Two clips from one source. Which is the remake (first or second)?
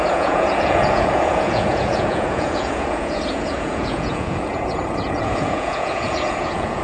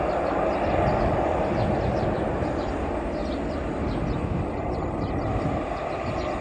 first